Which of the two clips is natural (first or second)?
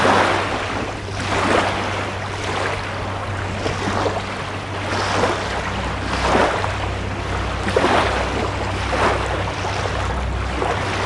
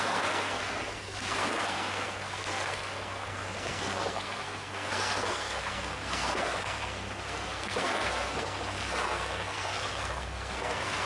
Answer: first